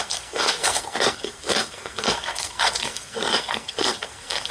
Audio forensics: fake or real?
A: fake